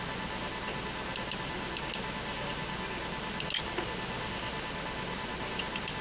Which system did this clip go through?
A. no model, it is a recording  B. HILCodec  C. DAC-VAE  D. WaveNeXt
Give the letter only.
A